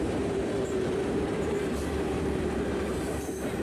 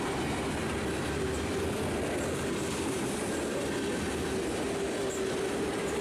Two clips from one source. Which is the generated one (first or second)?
first